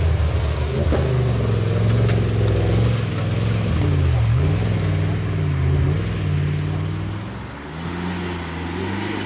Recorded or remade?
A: recorded